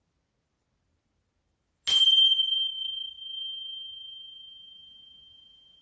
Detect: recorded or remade recorded